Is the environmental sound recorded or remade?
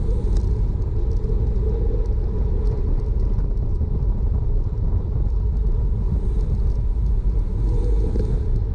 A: recorded